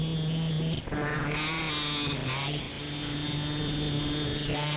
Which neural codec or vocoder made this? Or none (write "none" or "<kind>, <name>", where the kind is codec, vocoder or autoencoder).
none